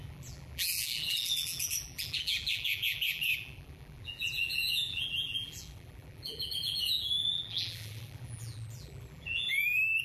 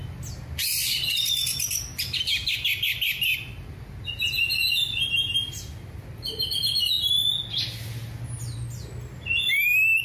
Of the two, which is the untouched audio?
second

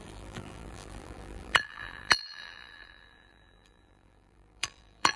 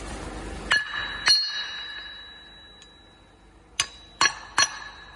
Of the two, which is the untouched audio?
second